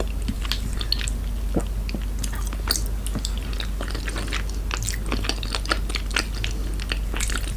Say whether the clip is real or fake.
real